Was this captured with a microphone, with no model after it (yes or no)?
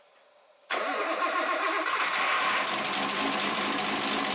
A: yes